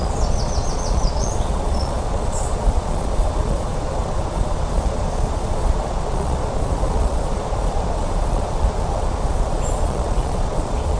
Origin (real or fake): fake